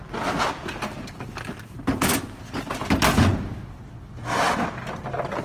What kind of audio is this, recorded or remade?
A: recorded